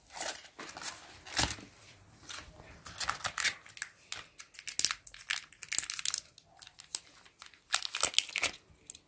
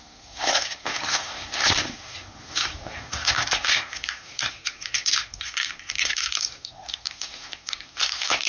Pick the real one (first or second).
first